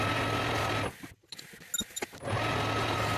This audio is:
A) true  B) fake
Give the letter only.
A